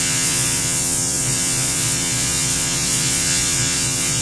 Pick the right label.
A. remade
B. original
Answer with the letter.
A